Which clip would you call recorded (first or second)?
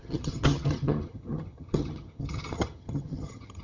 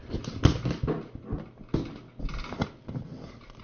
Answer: second